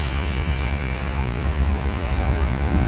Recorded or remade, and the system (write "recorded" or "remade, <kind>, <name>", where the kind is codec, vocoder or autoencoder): remade, vocoder, Vocos